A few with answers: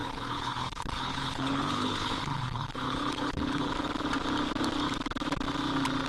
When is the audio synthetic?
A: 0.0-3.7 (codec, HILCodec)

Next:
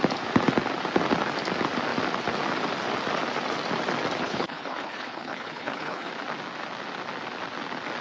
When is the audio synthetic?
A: 4.2-6.1 (codec, HILCodec)

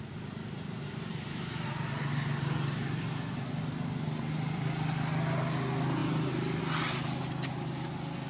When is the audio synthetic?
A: 1.1-1.7 (autoencoder, DAC-VAE)